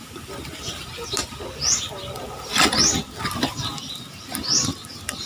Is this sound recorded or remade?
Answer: recorded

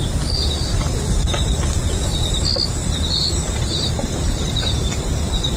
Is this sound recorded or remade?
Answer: recorded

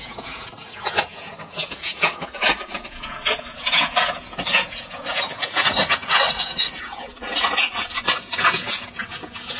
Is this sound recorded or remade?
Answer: remade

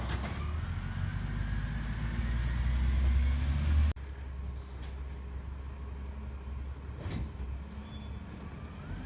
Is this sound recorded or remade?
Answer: recorded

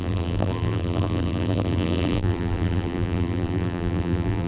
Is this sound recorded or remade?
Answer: remade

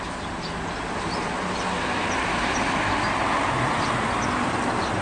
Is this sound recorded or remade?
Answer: recorded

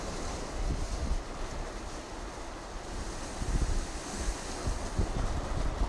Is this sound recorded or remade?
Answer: recorded